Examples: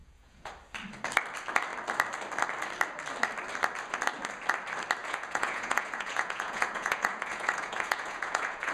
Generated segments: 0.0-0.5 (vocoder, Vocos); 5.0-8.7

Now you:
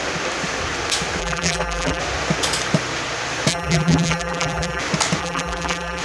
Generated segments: 1.2-2.0 (vocoder, BigVGAN v2); 3.5-4.8; 5.2-6.0

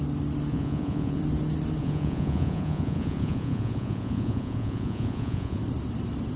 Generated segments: 0.5-1.2 (vocoder, Vocos); 1.8-5.6

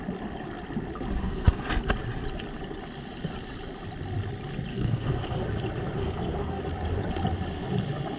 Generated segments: 1.2-1.7 (codec, SNAC); 4.7-5.4; 6.0-6.6

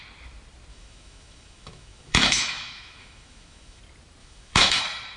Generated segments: 0.7-3.8 (autoencoder, DAC-VAE); 4.2-4.8

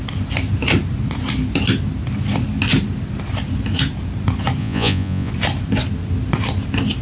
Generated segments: 4.6-5.3 (vocoder, Vocos)

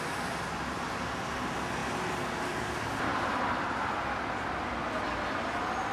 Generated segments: 3.1-3.9 (vocoder, BigVGAN v2)

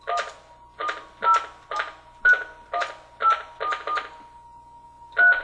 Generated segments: none